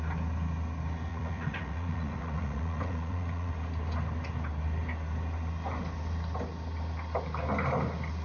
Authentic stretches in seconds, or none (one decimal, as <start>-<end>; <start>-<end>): 0.0-1.1; 3.5-8.2